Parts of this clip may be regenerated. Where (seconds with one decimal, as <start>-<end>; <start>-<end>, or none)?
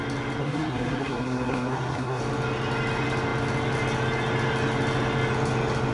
0.4-2.2